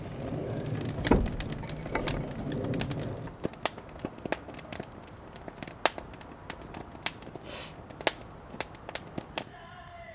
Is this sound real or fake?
real